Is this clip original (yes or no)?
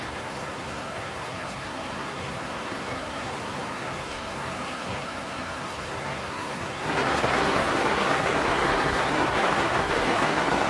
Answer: no